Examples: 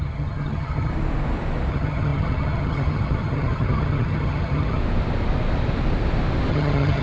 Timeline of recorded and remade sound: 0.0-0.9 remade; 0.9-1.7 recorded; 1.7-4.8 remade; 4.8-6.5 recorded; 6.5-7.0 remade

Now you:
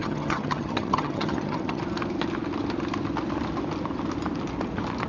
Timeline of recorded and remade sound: 0.0-1.8 remade; 1.8-5.1 recorded

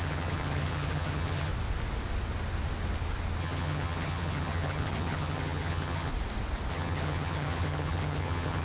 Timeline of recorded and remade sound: 0.0-1.5 remade; 1.5-3.4 recorded; 3.4-6.1 remade; 6.1-6.7 recorded; 6.7-8.6 remade